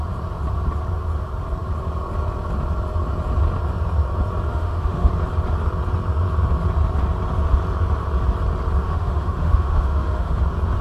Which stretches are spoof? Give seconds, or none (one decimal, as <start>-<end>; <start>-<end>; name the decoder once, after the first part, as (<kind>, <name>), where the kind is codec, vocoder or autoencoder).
4.5-5.1 (autoencoder, DAC-VAE); 8.8-10.4